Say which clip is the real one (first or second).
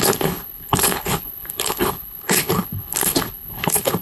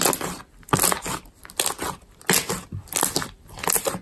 second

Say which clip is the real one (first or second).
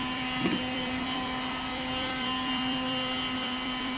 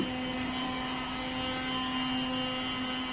second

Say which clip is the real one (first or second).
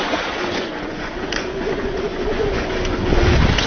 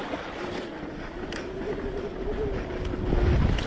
second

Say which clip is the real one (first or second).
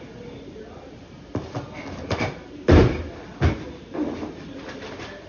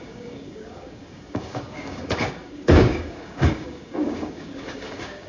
first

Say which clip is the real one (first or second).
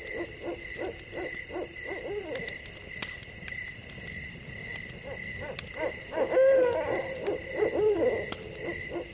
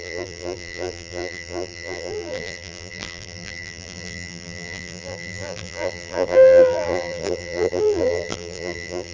first